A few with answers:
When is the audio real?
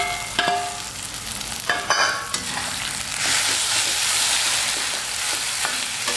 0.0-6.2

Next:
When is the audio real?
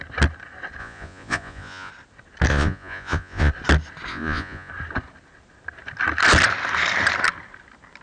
0.0-0.8; 1.9-2.5; 3.5-4.1; 4.7-8.0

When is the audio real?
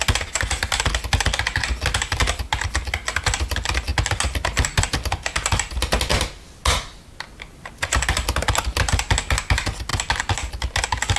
0.0-11.2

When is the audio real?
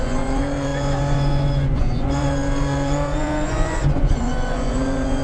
none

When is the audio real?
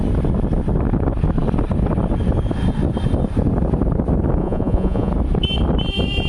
0.0-4.4; 5.1-6.3